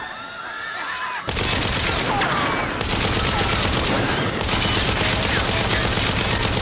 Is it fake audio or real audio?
real